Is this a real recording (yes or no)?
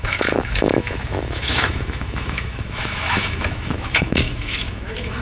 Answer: no